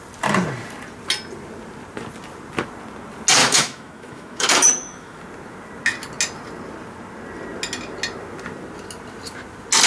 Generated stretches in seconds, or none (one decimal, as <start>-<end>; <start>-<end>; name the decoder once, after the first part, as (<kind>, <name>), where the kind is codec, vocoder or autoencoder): 3.4-5.2 (autoencoder, DAC-VAE)